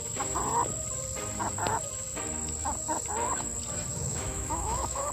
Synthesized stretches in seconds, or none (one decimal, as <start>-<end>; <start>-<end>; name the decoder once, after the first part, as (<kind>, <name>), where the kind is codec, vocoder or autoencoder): 3.9-5.1 (autoencoder, DAC-VAE)